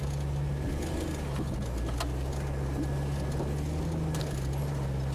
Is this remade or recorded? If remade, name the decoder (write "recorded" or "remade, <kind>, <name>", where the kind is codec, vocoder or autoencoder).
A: recorded